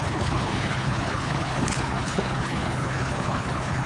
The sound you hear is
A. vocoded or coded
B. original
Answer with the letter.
A